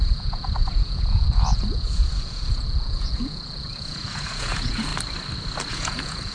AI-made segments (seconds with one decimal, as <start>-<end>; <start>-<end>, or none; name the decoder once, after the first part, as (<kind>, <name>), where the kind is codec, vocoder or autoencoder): 0.0-4.9 (vocoder, Vocos); 5.7-6.3